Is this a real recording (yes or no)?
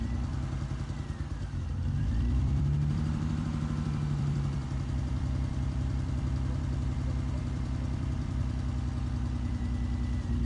no